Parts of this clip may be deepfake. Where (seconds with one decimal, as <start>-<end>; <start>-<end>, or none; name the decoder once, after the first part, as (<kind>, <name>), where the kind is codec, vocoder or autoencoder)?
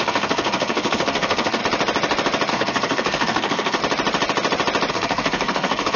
0.0-1.6 (codec, SNAC); 2.5-3.8; 4.9-6.0